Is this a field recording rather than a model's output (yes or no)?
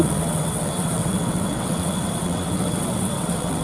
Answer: no